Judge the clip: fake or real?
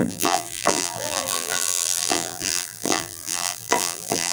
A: fake